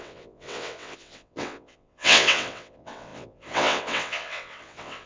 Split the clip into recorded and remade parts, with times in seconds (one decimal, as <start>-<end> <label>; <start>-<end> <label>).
0.0-5.1 remade